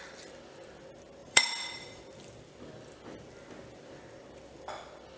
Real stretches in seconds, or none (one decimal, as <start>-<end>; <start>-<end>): 0.0-1.2; 2.0-5.2